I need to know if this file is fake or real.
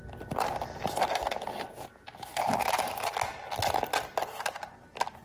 real